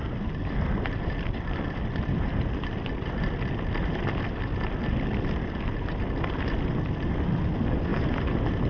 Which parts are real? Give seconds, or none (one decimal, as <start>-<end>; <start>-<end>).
0.0-7.9